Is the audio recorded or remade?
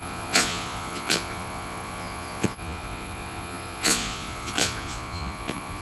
remade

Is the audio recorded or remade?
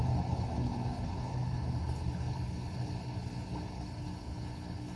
remade